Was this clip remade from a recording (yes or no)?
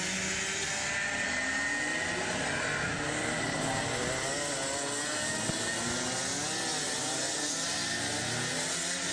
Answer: no